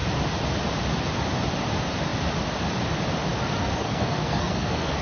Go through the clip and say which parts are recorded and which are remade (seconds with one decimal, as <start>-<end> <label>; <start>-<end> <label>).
0.0-3.6 recorded; 3.6-5.0 remade